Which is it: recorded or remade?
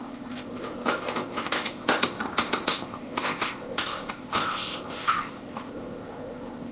remade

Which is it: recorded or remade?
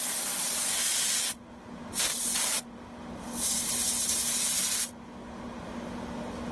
recorded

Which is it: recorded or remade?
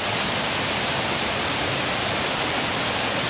recorded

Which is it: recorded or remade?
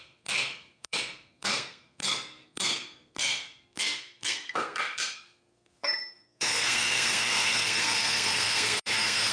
remade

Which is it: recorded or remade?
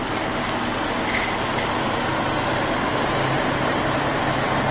recorded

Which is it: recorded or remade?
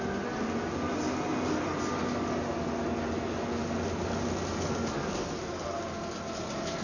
recorded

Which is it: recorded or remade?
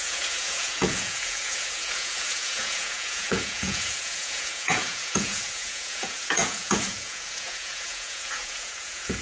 remade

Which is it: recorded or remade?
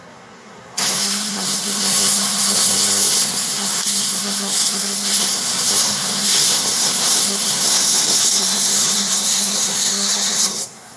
remade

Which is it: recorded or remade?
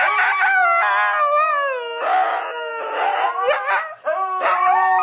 recorded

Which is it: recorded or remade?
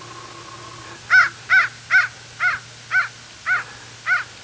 recorded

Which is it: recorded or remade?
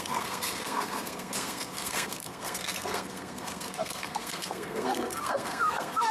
remade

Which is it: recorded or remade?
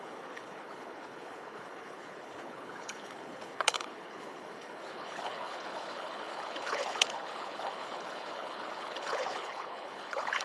remade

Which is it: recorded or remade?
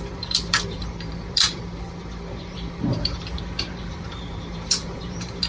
remade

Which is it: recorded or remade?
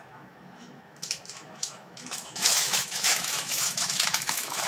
remade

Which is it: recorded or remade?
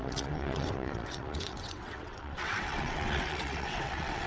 remade